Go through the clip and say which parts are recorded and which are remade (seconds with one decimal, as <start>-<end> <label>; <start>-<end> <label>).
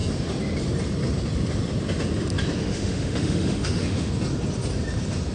0.0-2.6 recorded; 2.6-4.1 remade; 4.1-5.3 recorded